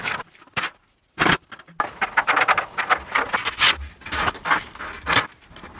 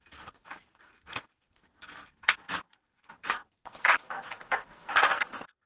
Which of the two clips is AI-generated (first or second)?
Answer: second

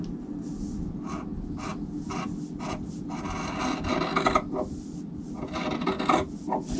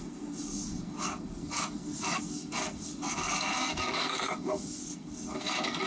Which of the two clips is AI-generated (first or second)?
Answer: second